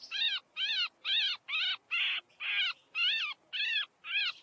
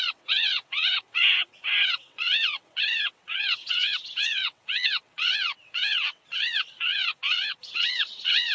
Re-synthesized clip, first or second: second